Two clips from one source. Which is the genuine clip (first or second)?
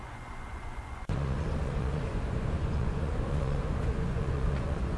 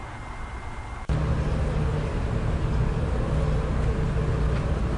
second